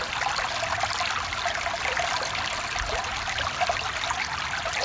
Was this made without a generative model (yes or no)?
yes